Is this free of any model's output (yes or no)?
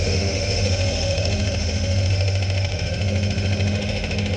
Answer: no